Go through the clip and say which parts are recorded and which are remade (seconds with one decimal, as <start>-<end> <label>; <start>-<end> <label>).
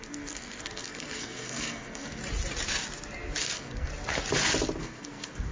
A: 0.0-2.2 remade; 2.2-3.4 recorded; 3.4-3.9 remade; 3.9-4.8 recorded; 4.8-5.5 remade